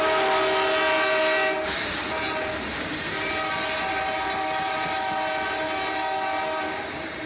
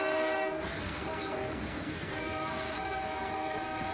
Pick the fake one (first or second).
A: second